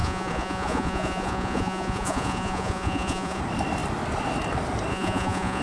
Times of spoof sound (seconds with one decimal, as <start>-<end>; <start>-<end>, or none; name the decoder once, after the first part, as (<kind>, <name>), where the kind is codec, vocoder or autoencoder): 0.0-3.4 (vocoder, Vocos); 4.9-5.6